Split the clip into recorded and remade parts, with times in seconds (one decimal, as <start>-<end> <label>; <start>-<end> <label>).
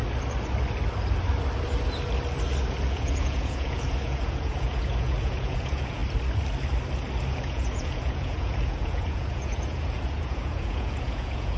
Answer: 0.0-2.9 recorded; 2.9-6.0 remade; 6.0-7.3 recorded; 7.3-11.6 remade